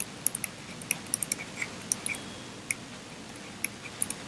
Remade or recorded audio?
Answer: recorded